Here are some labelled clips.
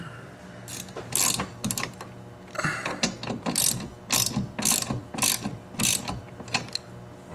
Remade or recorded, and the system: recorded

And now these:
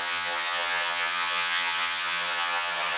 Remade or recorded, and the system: remade, vocoder, HiFi-GAN